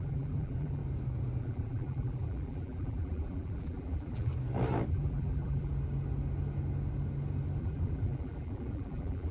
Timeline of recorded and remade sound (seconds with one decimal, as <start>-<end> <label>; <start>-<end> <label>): 0.0-0.8 remade; 0.8-1.4 recorded; 1.4-4.3 remade; 4.3-4.9 recorded; 4.9-5.7 remade; 5.7-7.6 recorded; 7.6-9.3 remade